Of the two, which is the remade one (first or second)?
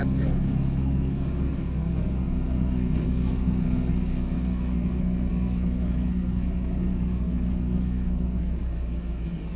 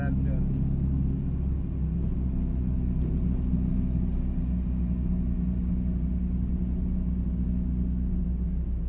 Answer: first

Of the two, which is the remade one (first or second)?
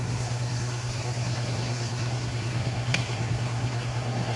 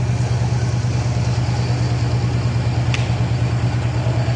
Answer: first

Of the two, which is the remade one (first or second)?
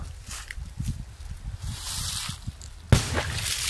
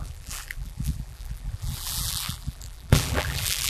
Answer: second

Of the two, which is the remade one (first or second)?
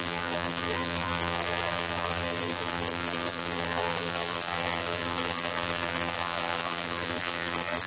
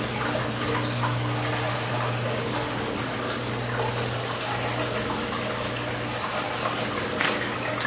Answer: first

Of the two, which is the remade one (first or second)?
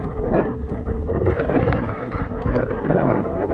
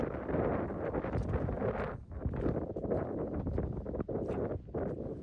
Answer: first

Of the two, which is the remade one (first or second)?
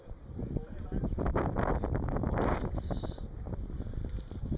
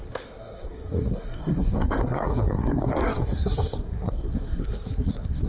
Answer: second